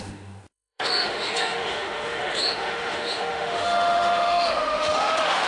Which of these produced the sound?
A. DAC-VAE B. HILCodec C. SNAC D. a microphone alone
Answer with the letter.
A